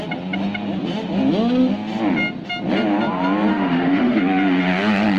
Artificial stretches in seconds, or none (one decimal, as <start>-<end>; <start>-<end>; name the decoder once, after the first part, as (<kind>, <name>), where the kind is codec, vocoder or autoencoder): 3.5-4.2 (autoencoder, DAC-VAE)